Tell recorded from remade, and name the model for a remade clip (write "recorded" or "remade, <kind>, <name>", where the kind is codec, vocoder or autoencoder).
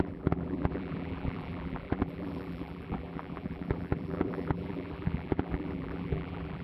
remade, vocoder, BigVGAN v2